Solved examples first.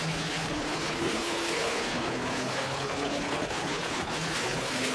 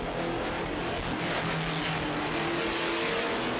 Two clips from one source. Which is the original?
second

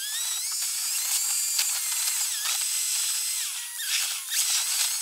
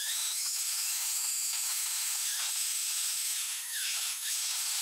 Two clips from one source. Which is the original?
first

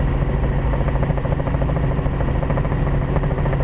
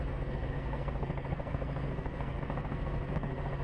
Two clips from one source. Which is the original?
first